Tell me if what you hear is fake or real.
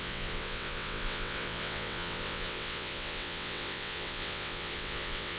fake